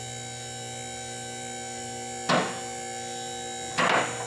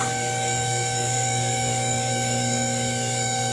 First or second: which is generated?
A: second